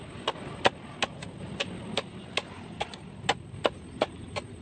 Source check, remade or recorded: recorded